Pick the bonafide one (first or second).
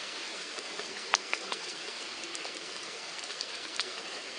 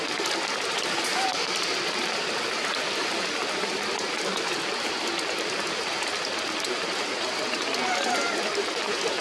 second